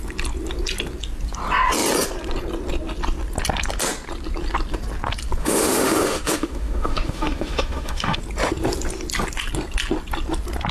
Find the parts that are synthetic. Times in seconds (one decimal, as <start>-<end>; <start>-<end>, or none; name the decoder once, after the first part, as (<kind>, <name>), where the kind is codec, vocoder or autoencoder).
5.4-8.2 (autoencoder, DAC-VAE)